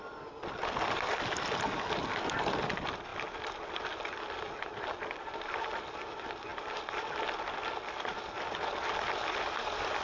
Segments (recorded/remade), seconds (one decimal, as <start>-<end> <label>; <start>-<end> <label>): 0.0-10.0 recorded